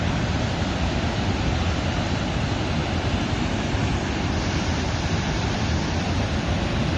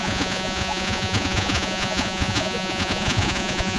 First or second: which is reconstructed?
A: second